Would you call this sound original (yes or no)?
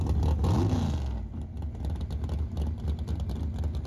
yes